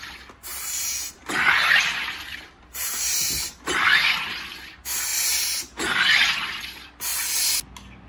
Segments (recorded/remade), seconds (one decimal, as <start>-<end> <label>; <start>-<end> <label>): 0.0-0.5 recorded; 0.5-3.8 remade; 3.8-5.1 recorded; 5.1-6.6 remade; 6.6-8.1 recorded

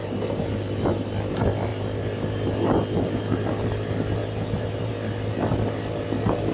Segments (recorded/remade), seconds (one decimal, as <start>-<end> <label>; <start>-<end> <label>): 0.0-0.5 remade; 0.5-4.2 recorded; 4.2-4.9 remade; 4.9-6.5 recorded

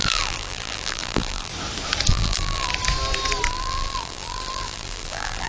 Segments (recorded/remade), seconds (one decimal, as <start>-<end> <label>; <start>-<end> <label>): 0.0-1.5 remade; 1.5-2.1 recorded; 2.1-2.7 remade; 2.7-3.5 recorded; 3.5-5.5 remade